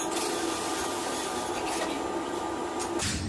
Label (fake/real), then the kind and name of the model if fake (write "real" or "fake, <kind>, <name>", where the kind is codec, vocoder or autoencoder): real